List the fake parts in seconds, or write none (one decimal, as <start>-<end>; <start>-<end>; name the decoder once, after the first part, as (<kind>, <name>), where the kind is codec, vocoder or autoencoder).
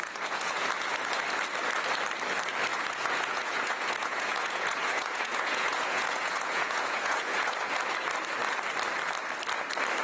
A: 0.0-0.7 (vocoder, Vocos); 2.7-7.7